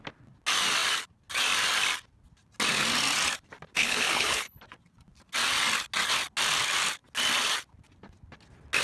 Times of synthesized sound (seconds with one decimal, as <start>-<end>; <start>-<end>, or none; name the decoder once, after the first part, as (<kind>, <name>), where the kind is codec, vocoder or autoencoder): 3.8-4.6 (codec, HILCodec)

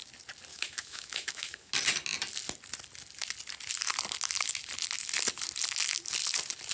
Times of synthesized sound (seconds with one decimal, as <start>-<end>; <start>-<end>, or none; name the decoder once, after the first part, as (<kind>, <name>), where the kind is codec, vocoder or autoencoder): 0.5-1.7 (autoencoder, DAC-VAE)

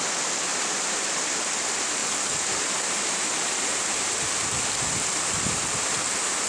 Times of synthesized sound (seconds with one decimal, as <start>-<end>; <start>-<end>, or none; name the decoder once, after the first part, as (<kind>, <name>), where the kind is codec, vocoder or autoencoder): 0.5-1.1 (vocoder, BigVGAN v2); 2.0-5.2

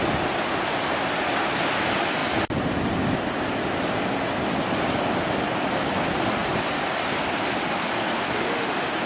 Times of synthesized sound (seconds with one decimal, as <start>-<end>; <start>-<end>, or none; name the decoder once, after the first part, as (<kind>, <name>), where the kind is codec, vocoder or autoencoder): 2.2-3.4 (vocoder, BigVGAN v2); 6.4-7.2

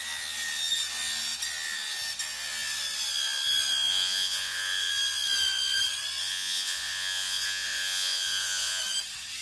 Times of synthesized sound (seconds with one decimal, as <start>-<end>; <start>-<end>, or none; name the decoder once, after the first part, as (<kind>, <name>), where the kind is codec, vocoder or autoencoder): 3.9-4.9 (vocoder, Vocos); 6.2-8.8

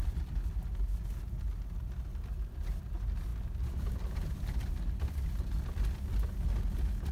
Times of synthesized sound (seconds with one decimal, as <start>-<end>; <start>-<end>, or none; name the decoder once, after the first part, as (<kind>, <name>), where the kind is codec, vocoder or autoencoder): none